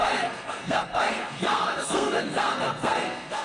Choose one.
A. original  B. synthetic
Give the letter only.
B